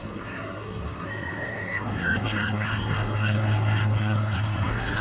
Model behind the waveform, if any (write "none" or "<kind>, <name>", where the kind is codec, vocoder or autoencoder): codec, SNAC